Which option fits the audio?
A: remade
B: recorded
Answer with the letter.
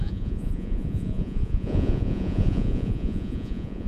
A